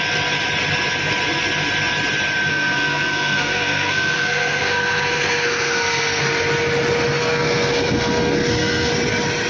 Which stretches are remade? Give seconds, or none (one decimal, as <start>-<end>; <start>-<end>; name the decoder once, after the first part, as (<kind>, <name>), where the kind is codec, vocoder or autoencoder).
2.5-6.2 (codec, SNAC); 7.2-8.9